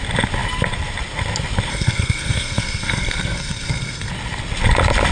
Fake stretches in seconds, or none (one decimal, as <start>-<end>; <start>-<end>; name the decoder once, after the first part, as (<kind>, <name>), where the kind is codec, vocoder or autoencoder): 1.7-4.1 (codec, SNAC)